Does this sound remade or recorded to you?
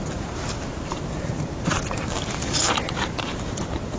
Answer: remade